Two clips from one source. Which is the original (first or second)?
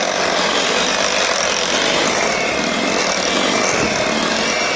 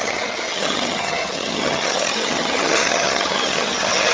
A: first